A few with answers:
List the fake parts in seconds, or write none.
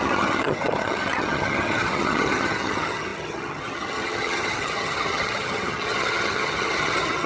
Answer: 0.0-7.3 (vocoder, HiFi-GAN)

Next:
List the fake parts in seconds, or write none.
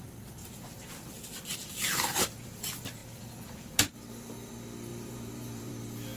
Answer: 0.4-1.1 (vocoder, BigVGAN v2); 4.9-5.7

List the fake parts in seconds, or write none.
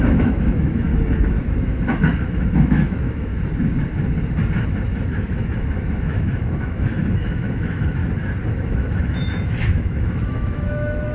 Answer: 0.0-0.9 (autoencoder, DAC-VAE); 1.6-3.3; 5.1-8.0; 8.5-11.1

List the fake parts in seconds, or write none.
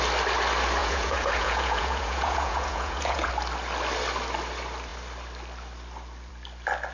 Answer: 0.8-3.3 (vocoder, Vocos)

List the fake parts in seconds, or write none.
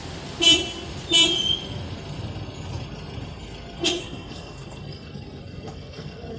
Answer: 3.8-6.4 (codec, SNAC)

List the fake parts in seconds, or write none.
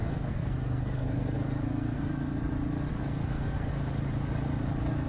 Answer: 0.0-2.1 (codec, SNAC); 2.9-3.7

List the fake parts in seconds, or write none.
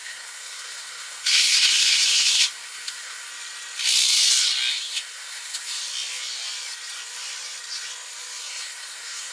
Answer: 0.0-3.3 (codec, SNAC); 4.7-5.8; 8.4-9.3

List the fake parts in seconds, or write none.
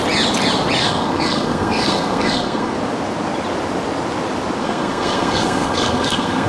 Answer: 0.8-2.7 (codec, SNAC); 4.6-6.5